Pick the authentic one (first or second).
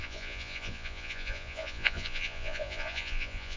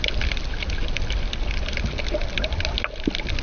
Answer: second